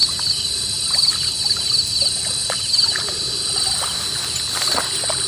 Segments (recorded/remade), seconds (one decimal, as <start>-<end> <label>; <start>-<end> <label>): 0.0-5.3 recorded